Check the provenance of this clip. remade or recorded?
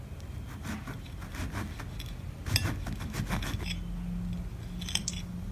recorded